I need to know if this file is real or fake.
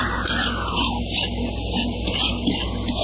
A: real